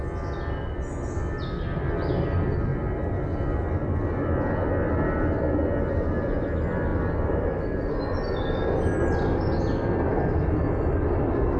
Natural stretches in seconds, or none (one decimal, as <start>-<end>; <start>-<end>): 0.0-10.1